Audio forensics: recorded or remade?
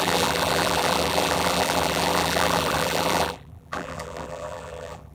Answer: remade